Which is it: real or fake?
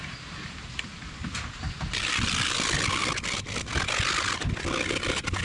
real